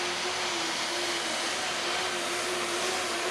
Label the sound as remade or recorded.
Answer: recorded